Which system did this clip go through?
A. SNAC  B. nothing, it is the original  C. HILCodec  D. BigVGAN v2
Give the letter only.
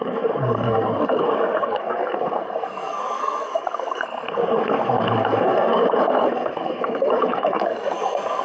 A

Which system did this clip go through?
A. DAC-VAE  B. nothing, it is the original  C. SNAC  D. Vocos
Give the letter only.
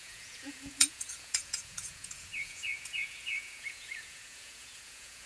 D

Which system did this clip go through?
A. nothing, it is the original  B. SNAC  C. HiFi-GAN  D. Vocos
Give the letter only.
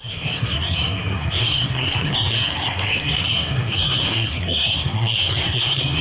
B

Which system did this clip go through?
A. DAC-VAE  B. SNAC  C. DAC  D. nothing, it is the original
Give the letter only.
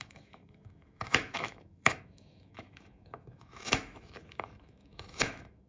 A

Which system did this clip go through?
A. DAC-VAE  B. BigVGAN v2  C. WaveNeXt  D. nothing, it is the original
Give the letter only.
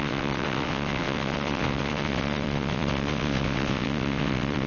C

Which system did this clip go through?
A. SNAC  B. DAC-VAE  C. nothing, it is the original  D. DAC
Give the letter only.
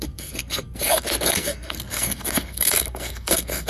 A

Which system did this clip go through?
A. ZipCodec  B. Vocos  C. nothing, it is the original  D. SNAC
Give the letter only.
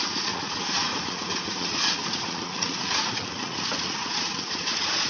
B